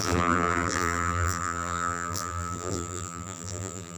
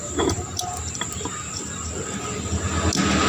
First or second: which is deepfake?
first